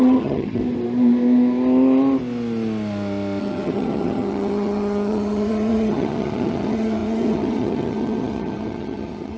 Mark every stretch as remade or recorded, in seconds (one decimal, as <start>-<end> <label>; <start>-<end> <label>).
0.0-0.6 remade; 0.6-3.4 recorded; 3.4-9.4 remade